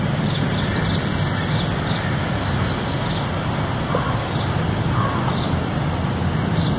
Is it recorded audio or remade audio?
recorded